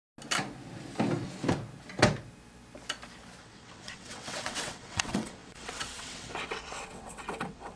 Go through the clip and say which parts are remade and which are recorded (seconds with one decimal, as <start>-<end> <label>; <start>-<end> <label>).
0.0-3.4 recorded; 3.4-7.8 remade